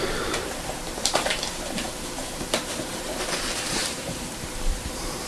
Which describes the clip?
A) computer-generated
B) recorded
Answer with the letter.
A